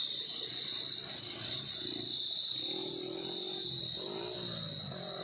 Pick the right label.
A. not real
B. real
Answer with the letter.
B